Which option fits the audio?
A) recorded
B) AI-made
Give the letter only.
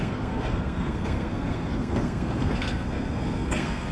B